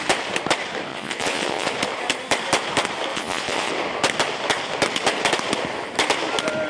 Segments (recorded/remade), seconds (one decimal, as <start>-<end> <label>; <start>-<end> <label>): 0.0-0.9 recorded; 0.9-1.7 remade; 1.7-3.1 recorded; 3.1-3.7 remade; 3.7-6.7 recorded